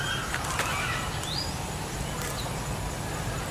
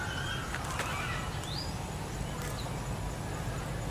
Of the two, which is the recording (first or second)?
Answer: second